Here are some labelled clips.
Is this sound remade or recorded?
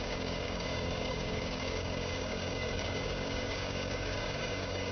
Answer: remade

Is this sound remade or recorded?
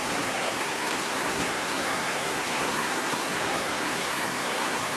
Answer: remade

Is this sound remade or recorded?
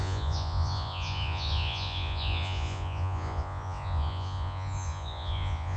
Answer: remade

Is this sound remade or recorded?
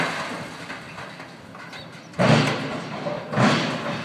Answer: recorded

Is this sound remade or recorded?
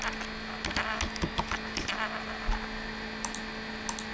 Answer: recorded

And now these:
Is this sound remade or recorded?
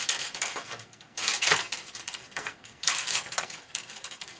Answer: remade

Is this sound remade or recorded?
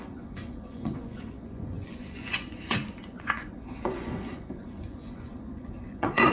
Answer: remade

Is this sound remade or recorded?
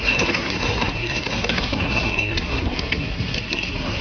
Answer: remade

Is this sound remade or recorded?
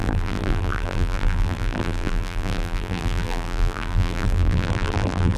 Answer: remade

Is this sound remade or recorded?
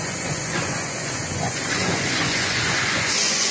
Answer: remade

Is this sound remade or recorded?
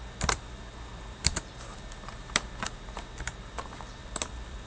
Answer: remade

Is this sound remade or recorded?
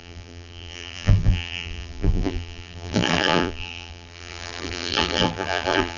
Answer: remade